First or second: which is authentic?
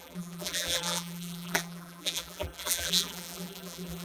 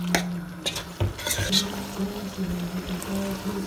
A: second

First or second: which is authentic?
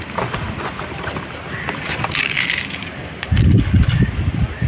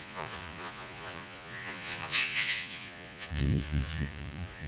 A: first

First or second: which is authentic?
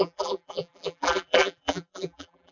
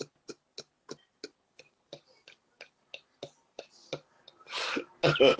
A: second